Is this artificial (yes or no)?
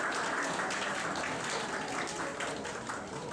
no